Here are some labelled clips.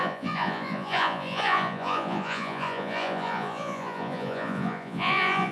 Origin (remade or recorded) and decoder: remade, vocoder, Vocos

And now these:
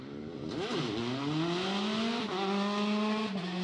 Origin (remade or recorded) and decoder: recorded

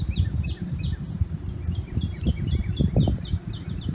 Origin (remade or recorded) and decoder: remade, vocoder, BigVGAN v2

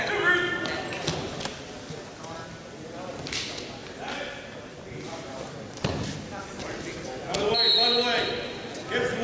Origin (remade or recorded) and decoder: recorded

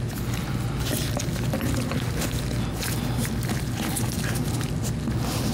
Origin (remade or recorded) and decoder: recorded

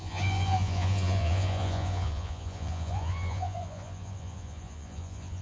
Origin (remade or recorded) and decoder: remade, vocoder, Vocos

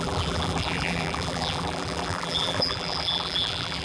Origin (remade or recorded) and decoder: remade, vocoder, BigVGAN v2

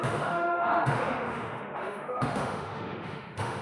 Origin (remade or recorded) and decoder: remade, autoencoder, DAC-VAE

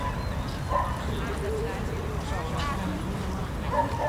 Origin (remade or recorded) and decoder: recorded